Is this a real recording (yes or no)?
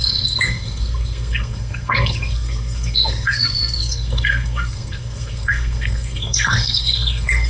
no